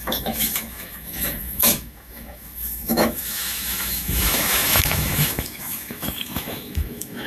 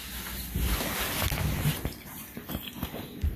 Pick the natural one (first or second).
second